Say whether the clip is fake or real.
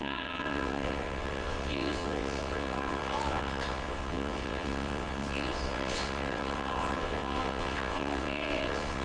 fake